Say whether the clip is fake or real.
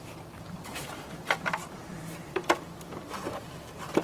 fake